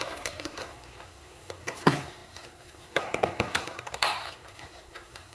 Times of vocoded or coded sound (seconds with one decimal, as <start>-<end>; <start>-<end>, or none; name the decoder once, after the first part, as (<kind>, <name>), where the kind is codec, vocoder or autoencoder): 0.0-5.3 (codec, SNAC)